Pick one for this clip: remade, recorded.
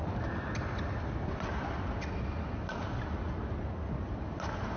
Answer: recorded